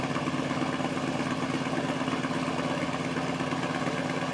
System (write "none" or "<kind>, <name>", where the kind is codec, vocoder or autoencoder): none